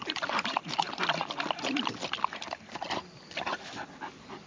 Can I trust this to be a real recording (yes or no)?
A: yes